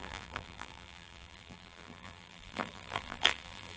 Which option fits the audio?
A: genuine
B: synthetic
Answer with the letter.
B